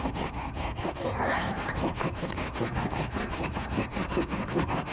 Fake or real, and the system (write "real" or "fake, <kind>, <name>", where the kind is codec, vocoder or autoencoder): fake, codec, SNAC